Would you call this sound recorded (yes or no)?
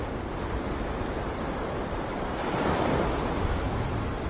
yes